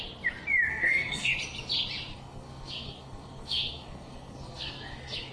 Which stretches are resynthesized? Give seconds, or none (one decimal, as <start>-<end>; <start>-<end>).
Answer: 0.7-1.3; 2.1-5.3